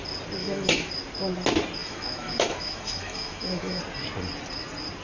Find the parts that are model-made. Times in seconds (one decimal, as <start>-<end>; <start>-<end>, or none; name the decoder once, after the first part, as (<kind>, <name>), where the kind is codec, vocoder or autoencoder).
0.4-0.9 (autoencoder, DAC-VAE); 1.8-3.8